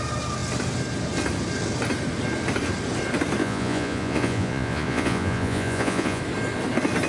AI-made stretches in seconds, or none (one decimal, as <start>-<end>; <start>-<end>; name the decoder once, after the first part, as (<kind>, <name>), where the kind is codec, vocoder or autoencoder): 3.4-6.2 (vocoder, Vocos)